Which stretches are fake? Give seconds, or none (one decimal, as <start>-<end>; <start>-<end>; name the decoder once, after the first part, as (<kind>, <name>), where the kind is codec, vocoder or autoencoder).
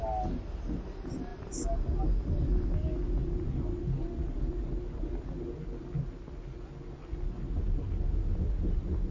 none